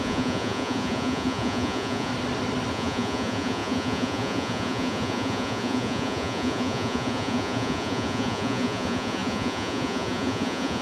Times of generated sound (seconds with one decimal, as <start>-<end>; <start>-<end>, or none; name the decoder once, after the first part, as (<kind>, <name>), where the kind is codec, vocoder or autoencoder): 0.0-2.1 (vocoder, Vocos); 2.7-10.8